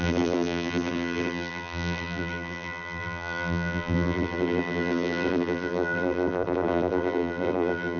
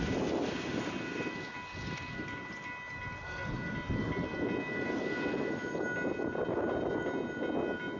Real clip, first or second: second